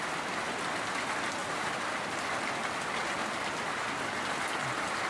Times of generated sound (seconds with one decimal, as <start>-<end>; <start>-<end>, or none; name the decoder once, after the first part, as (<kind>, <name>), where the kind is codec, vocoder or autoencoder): none